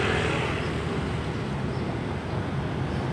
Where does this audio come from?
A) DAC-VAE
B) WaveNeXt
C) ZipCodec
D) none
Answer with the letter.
D